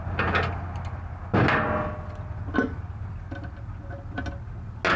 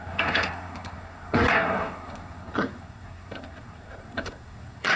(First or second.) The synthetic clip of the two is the second